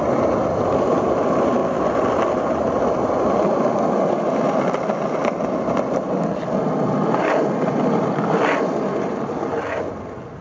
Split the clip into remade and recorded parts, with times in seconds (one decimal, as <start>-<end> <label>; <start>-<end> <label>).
0.0-10.4 recorded